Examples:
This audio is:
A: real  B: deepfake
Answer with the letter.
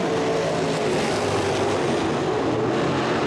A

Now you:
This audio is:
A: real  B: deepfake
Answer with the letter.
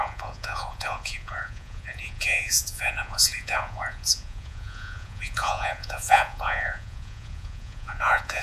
B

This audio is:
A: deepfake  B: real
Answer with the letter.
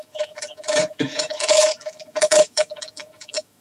A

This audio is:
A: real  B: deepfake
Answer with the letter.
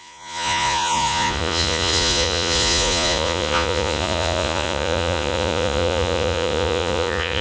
B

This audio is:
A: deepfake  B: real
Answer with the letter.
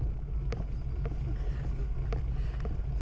B